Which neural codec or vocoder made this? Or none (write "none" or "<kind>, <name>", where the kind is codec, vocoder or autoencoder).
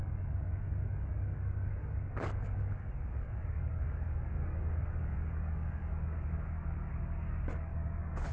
codec, DAC